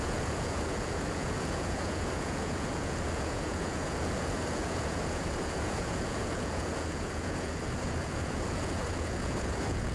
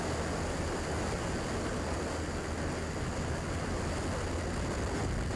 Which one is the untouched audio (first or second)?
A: second